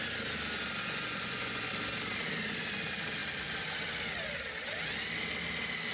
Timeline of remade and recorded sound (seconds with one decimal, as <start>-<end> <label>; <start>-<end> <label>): 0.0-0.8 recorded; 0.8-1.7 remade; 1.7-5.9 recorded